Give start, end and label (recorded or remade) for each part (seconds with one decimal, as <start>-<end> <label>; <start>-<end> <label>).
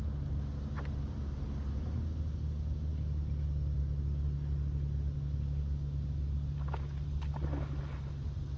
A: 0.0-8.6 recorded